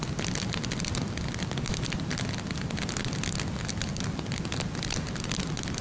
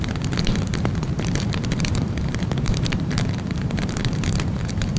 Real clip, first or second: first